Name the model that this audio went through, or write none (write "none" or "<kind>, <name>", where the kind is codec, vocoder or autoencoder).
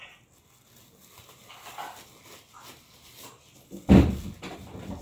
none